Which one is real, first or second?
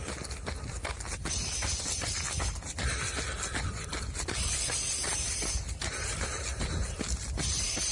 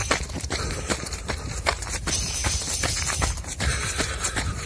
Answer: first